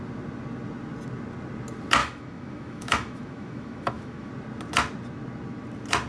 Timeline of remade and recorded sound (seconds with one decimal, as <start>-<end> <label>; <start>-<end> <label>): 0.0-2.0 recorded; 2.0-4.3 remade; 4.3-6.1 recorded